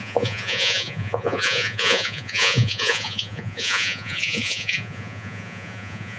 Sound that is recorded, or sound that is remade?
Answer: remade